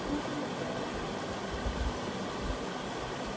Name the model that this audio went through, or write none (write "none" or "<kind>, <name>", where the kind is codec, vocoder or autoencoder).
none